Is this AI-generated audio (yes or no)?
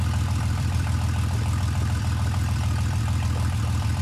yes